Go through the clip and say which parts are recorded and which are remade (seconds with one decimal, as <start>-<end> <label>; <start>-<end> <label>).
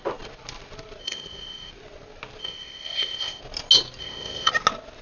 0.0-1.0 recorded; 1.0-1.7 remade; 1.7-2.4 recorded; 2.4-3.4 remade; 3.4-4.0 recorded; 4.0-4.5 remade; 4.5-5.0 recorded